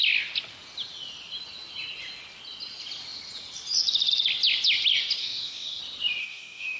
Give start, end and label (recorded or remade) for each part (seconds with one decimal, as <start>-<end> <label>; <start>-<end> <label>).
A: 0.0-5.2 recorded; 5.2-5.8 remade; 5.8-6.2 recorded; 6.2-6.8 remade